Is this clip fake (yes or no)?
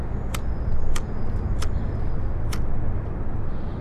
no